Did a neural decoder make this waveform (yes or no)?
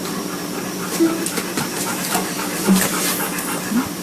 no